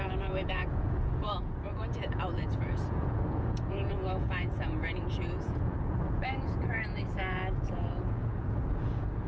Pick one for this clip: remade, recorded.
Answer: remade